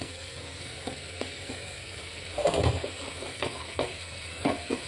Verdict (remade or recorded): remade